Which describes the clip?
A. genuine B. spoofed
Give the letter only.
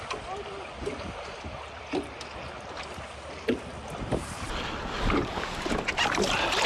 A